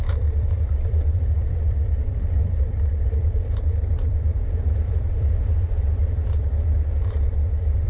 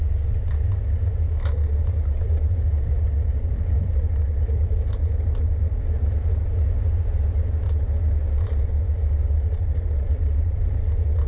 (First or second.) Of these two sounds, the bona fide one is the second